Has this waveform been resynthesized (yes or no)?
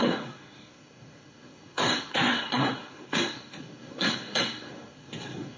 yes